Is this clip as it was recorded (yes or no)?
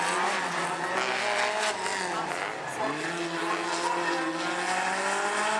yes